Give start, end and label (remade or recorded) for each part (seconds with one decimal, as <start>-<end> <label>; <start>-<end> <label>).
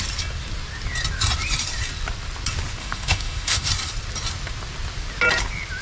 0.0-2.8 recorded; 2.8-3.7 remade; 3.7-5.8 recorded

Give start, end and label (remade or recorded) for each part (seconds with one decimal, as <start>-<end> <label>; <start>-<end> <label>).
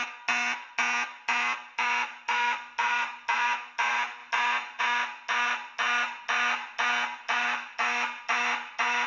0.0-9.1 recorded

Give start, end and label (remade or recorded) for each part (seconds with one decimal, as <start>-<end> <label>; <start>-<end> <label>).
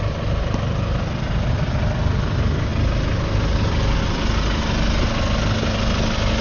0.0-6.4 recorded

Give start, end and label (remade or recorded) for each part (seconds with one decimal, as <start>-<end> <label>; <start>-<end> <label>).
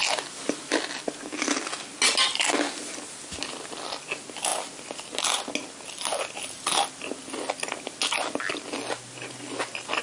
0.0-10.0 recorded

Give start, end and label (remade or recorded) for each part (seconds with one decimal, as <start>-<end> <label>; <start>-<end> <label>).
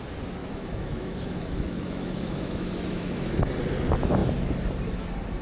0.0-0.4 recorded; 0.4-3.3 remade; 3.3-5.4 recorded